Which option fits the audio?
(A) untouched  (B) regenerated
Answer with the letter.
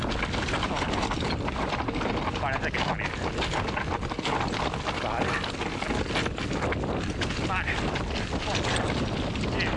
A